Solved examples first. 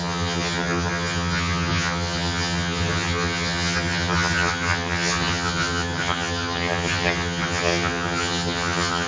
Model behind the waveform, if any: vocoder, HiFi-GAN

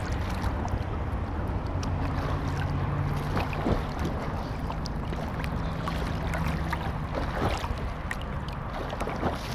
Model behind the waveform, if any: none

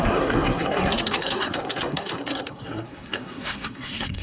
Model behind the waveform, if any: codec, SNAC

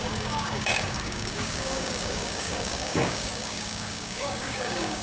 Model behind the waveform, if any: codec, DAC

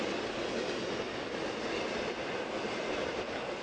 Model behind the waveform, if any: none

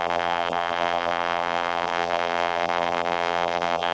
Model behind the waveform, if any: vocoder, BigVGAN v2